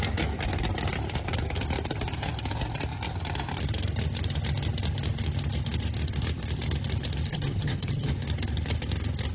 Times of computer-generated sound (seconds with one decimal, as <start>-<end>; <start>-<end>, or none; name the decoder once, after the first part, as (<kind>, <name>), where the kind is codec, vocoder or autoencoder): 7.3-8.1 (vocoder, HiFi-GAN)